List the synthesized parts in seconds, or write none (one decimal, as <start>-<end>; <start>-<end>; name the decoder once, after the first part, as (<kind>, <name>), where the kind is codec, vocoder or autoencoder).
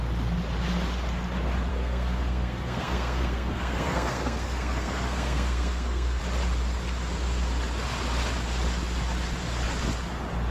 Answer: 1.7-6.2 (codec, SNAC)